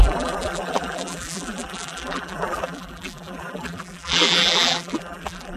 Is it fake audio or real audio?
fake